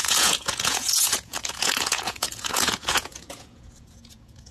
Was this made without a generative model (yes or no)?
no